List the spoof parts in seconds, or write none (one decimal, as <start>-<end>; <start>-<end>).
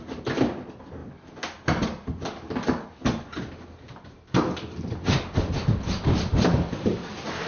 none